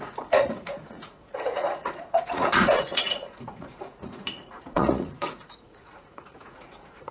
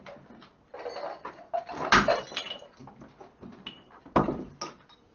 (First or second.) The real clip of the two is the second